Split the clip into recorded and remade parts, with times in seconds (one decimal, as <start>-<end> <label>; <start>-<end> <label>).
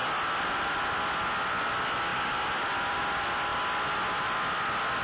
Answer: 0.0-5.0 recorded